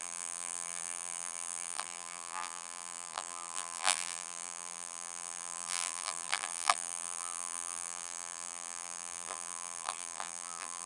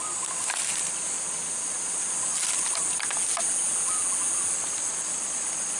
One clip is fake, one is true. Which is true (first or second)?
second